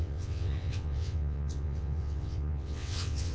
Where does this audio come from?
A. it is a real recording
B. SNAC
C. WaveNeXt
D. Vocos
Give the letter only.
C